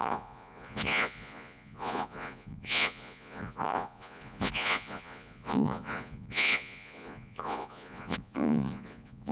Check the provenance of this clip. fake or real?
fake